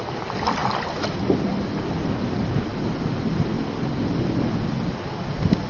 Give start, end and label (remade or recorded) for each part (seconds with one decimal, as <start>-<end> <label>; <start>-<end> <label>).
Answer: 0.0-5.7 recorded